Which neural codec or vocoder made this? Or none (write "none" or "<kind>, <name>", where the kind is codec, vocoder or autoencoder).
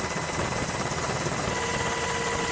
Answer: none